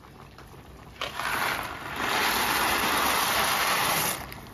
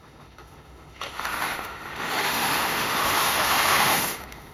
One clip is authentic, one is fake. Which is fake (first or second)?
second